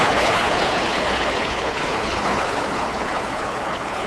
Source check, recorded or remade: remade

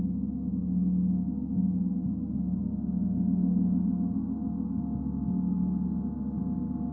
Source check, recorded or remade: recorded